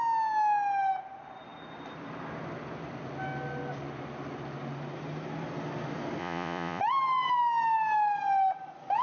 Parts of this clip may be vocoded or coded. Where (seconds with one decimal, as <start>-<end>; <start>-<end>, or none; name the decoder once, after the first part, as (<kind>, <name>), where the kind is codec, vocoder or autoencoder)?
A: 6.2-6.8 (vocoder, Vocos)